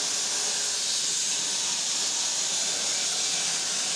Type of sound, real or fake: real